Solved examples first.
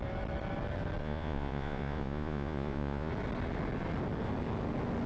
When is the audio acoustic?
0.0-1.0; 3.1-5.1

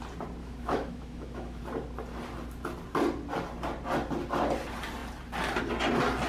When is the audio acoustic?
0.0-0.4; 1.6-6.3